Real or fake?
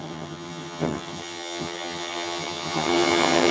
fake